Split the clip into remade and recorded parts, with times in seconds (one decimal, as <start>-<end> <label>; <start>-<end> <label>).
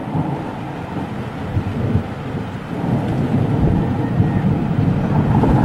0.0-5.6 recorded